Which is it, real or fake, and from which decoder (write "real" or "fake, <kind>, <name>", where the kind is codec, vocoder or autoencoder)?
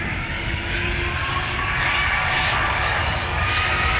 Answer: fake, codec, DAC